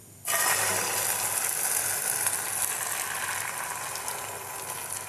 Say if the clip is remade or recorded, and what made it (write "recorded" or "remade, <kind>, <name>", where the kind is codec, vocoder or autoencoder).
recorded